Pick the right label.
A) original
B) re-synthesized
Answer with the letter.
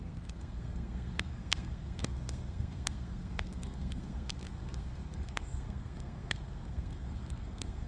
B